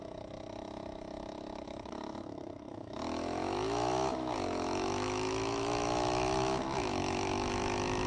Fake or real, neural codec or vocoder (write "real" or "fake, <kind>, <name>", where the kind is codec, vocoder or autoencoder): fake, autoencoder, DAC-VAE